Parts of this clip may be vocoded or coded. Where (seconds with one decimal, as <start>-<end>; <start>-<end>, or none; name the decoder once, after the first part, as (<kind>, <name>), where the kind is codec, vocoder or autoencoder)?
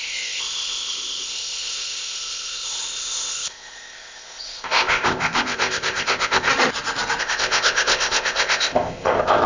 0.0-6.5 (codec, ZipCodec); 7.2-9.5